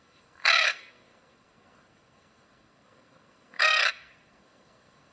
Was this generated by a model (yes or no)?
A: yes